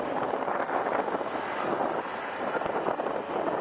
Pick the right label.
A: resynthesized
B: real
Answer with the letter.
B